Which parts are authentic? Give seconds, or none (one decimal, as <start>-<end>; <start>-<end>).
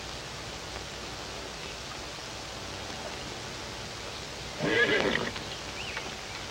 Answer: 0.0-6.5